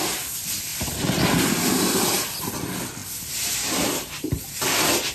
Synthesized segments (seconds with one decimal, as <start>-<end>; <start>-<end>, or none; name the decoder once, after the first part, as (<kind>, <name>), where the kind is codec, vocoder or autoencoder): none